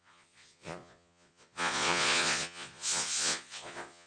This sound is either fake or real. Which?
fake